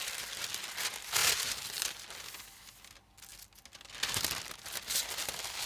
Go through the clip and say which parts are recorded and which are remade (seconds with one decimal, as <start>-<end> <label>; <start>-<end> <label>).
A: 0.0-5.7 recorded